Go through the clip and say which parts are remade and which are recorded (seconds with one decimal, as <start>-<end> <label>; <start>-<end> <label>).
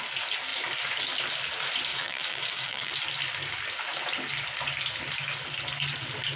0.0-1.9 recorded; 1.9-2.9 remade; 2.9-6.4 recorded